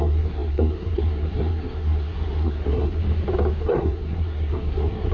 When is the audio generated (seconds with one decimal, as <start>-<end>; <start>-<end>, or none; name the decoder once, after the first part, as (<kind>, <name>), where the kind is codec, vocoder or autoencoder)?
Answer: 0.0-3.0 (codec, SNAC); 3.6-5.1